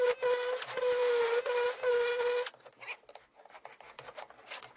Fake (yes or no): no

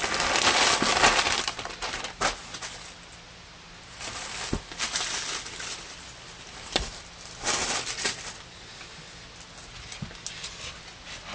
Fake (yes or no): no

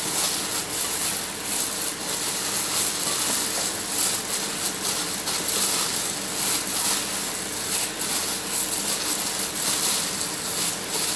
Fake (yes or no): no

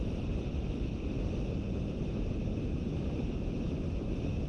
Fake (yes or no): no